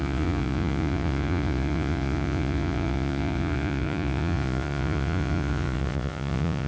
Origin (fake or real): fake